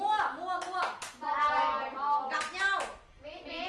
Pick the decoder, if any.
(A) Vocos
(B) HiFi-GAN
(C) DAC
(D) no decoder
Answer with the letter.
D